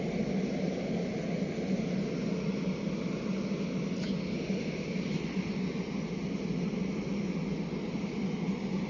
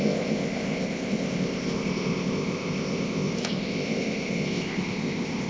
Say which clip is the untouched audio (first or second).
first